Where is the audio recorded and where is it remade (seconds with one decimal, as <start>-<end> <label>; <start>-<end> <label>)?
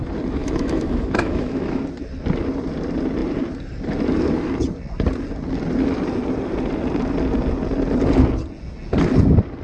0.0-0.4 recorded; 0.4-1.8 remade; 1.8-9.6 recorded